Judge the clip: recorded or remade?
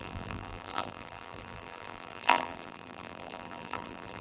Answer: remade